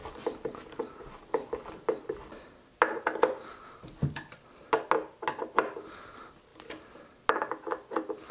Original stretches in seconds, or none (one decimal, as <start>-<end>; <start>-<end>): 0.0-8.3